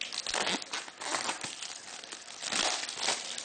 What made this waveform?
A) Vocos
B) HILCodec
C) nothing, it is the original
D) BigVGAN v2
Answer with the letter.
C